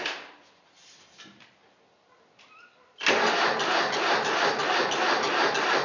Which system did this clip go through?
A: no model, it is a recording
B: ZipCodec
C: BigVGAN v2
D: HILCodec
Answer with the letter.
A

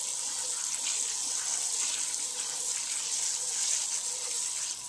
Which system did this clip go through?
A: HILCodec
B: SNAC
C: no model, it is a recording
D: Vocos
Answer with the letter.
C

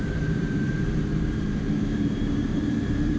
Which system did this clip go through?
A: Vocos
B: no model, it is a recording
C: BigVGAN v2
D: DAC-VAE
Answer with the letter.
C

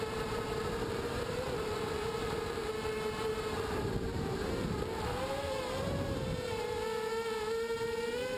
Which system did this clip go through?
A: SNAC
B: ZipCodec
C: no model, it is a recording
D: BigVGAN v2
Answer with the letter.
D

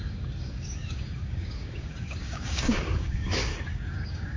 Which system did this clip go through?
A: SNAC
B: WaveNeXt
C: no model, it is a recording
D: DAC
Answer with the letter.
D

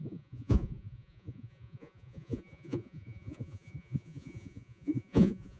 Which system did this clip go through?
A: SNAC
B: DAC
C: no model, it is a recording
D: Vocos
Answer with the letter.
D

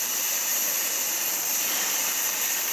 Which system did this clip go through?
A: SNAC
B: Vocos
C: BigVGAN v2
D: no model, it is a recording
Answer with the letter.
D